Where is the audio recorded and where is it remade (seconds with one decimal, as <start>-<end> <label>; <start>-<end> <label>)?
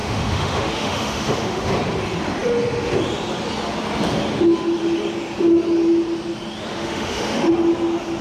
0.0-1.7 remade; 1.7-6.7 recorded; 6.7-7.5 remade; 7.5-8.2 recorded